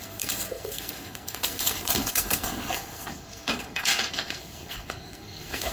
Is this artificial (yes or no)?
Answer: yes